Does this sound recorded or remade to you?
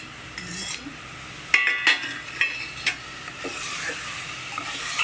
recorded